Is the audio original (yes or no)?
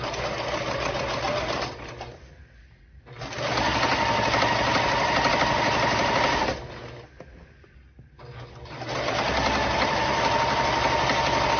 yes